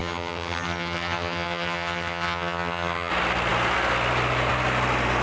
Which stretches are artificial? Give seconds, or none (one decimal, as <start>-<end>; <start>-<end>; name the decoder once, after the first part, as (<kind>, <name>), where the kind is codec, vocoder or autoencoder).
0.0-3.1 (vocoder, HiFi-GAN)

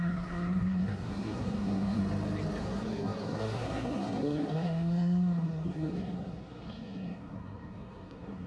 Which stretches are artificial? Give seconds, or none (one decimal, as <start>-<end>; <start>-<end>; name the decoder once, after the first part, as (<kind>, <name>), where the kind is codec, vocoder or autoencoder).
0.0-2.0 (codec, SNAC); 2.6-8.5